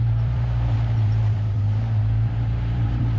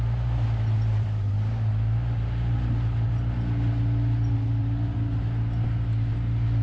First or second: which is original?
second